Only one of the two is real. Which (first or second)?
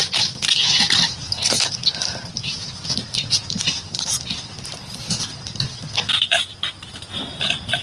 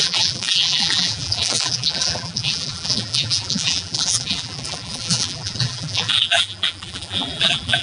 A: first